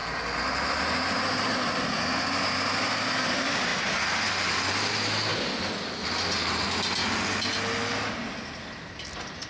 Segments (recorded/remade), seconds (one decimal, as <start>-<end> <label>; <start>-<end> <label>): 0.0-9.5 recorded